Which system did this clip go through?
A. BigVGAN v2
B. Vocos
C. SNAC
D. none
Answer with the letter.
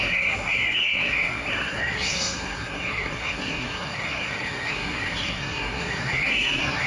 C